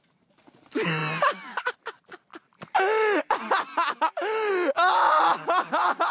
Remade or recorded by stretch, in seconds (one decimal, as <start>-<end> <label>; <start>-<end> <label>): 0.0-6.1 recorded